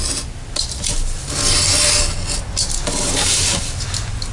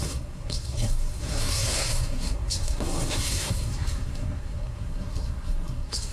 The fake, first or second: second